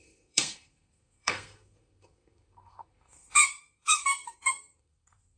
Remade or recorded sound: remade